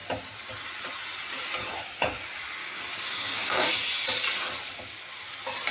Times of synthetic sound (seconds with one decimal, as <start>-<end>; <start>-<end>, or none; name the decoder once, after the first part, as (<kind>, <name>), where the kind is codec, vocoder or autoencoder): 2.6-3.7 (codec, DAC)